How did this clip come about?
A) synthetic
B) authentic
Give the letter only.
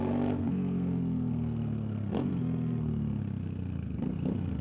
A